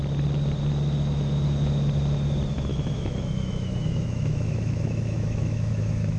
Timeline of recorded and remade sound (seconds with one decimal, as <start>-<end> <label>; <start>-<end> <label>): 0.0-2.7 recorded; 2.7-6.2 remade

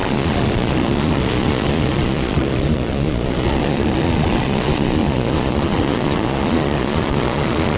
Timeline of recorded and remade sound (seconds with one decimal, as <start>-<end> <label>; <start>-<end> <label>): 0.0-7.8 remade

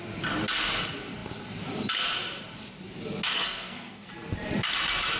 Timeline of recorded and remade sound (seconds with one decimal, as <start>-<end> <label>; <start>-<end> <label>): 0.0-3.3 recorded; 3.3-4.1 remade; 4.1-5.2 recorded

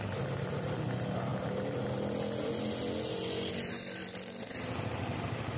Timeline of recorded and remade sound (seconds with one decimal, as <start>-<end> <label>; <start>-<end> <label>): 0.0-5.6 recorded

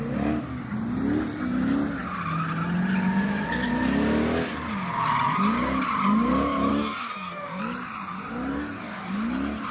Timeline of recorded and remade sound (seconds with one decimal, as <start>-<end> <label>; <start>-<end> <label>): 0.0-6.7 recorded; 6.7-7.6 remade; 7.6-8.5 recorded; 8.5-9.0 remade; 9.0-9.7 recorded

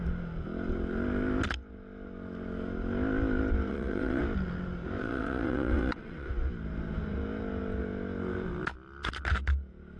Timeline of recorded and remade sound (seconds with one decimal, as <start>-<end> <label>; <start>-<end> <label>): 0.0-3.7 recorded; 3.7-4.2 remade; 4.2-5.0 recorded; 5.0-6.3 remade; 6.3-10.0 recorded

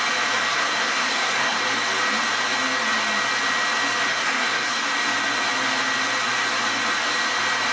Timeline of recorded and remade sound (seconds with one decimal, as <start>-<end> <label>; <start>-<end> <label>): 0.0-0.5 recorded; 0.5-1.6 remade; 1.6-4.1 recorded; 4.1-4.8 remade; 4.8-7.7 recorded